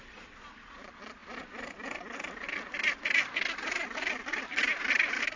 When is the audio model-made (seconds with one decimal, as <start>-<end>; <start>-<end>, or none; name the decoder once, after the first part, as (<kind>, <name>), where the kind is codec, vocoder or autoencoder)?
none